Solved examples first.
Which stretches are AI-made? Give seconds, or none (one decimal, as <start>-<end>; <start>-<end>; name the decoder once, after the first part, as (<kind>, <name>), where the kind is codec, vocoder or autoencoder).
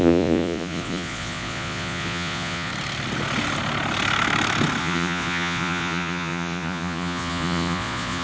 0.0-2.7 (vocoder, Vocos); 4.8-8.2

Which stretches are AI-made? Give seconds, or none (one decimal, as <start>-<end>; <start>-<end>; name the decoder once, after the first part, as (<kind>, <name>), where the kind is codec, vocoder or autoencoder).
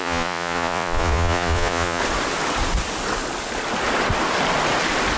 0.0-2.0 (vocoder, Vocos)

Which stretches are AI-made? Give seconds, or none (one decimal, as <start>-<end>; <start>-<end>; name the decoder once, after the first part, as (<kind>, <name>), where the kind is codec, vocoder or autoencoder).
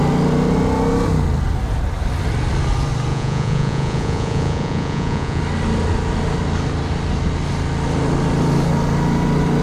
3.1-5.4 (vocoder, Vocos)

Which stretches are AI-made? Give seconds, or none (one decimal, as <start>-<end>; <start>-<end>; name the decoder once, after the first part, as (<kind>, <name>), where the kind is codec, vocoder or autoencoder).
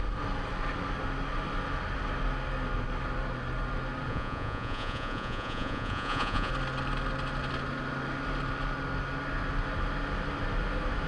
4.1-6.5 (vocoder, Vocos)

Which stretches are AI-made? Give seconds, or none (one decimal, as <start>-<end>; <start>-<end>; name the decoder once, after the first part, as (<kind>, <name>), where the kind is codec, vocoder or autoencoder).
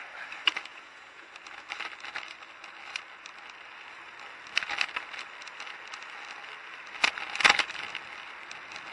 0.7-1.3 (vocoder, Vocos)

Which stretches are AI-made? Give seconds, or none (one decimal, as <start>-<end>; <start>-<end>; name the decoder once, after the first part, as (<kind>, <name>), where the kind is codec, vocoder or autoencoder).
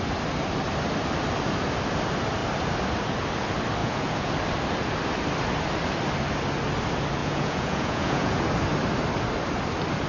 3.8-4.3 (vocoder, Vocos); 7.2-8.4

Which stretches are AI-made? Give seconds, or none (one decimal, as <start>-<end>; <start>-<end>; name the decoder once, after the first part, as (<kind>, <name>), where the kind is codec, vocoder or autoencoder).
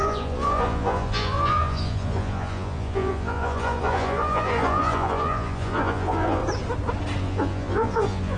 0.0-6.4 (vocoder, Vocos); 7.2-8.4